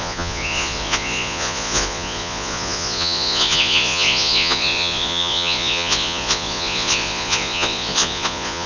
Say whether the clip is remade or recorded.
remade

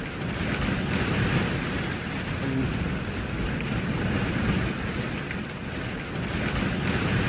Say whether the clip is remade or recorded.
recorded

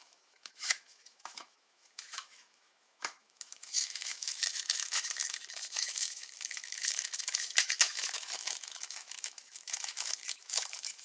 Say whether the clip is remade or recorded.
remade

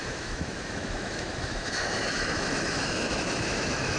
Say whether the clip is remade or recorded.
remade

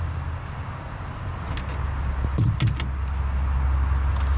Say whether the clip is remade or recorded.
recorded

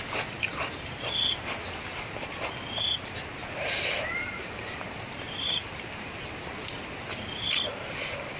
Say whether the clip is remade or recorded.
recorded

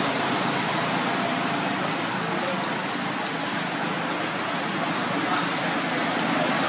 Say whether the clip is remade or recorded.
recorded